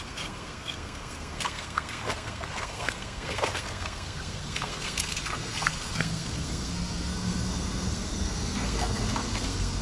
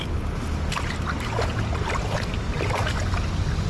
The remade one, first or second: first